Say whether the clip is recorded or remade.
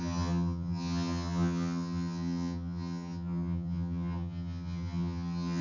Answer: remade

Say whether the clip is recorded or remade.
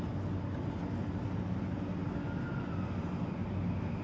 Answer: recorded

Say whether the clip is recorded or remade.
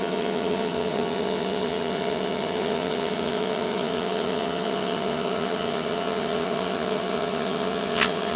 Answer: remade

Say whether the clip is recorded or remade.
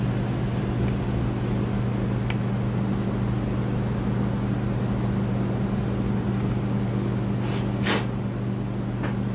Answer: recorded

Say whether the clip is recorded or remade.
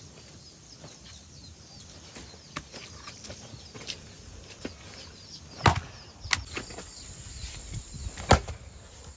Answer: recorded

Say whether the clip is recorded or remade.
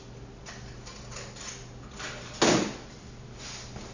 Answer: recorded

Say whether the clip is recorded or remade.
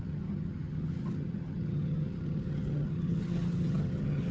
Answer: remade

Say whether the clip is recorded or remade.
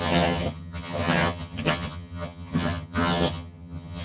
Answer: remade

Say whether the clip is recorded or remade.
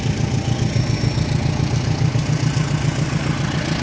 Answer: recorded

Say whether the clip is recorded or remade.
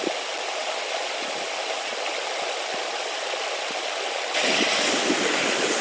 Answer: recorded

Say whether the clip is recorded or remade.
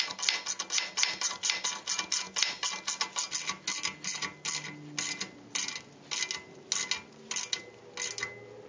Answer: recorded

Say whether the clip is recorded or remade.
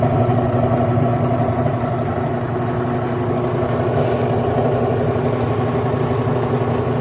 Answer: recorded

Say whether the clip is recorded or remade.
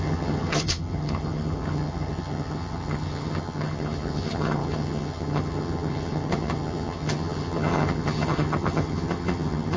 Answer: remade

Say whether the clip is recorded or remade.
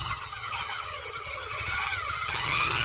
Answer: remade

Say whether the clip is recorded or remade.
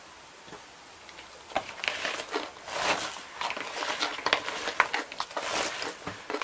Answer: recorded